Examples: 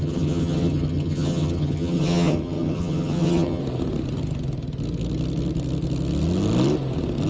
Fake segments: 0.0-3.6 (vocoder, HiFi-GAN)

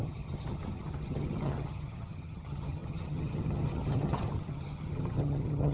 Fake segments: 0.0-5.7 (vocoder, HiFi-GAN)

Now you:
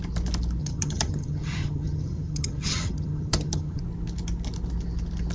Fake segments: 0.6-3.8 (vocoder, HiFi-GAN)

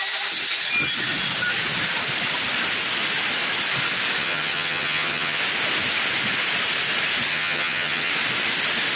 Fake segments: 4.2-5.4 (vocoder, HiFi-GAN); 7.3-8.1

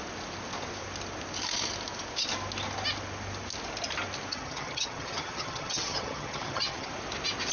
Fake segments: 4.3-6.9 (vocoder, HiFi-GAN)